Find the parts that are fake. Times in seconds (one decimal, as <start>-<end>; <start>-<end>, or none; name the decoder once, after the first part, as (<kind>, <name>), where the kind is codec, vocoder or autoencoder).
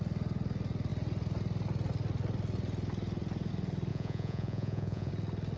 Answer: 3.9-5.1 (vocoder, Vocos)